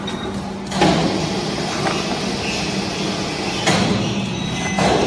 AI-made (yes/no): no